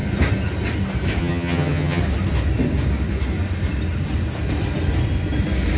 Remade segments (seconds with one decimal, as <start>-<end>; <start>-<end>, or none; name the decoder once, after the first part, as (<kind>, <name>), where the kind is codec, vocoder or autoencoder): 1.2-2.0 (vocoder, HiFi-GAN)